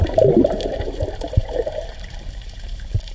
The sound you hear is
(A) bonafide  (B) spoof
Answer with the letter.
B